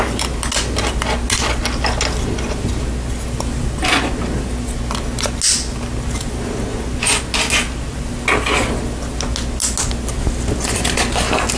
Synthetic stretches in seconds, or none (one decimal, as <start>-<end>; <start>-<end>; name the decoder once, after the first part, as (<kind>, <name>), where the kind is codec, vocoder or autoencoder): 6.7-7.2 (vocoder, Vocos)